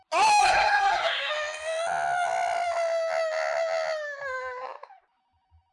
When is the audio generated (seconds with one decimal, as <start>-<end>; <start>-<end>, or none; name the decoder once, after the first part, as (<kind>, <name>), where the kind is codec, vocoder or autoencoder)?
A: 0.4-1.3 (codec, SNAC)